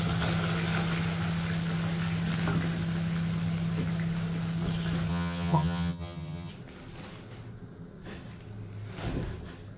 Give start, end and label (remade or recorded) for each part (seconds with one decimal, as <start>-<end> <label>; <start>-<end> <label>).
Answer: 0.0-5.1 recorded; 5.1-6.5 remade; 6.5-9.8 recorded